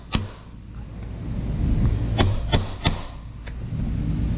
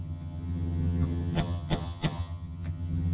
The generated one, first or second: second